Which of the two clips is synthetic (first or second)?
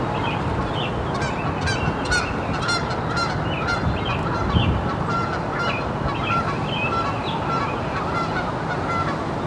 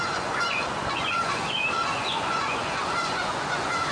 second